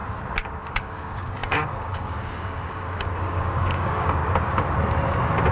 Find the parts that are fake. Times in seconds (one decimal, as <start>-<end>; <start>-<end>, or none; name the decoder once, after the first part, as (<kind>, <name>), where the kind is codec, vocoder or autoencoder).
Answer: 0.5-4.2 (codec, DAC)